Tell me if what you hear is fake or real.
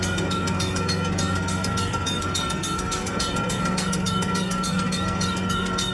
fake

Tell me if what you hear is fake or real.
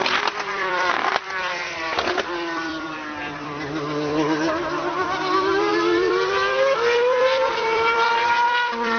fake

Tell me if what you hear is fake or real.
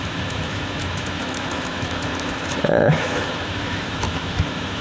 fake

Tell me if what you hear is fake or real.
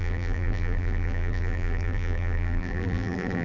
fake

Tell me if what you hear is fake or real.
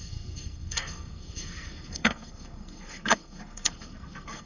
fake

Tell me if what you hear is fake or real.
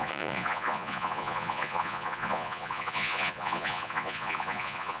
fake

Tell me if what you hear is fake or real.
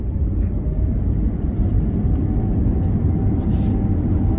real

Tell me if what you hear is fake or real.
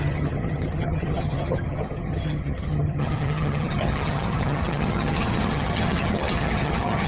fake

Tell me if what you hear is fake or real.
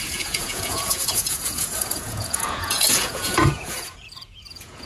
fake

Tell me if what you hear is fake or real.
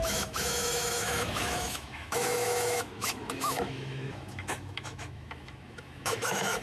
fake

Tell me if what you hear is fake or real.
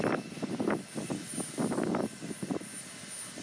real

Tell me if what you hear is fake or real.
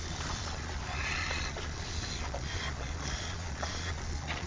fake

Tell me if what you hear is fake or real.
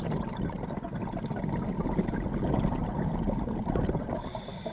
real